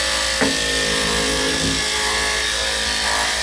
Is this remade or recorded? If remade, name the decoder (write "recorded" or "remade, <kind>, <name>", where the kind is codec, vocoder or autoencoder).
recorded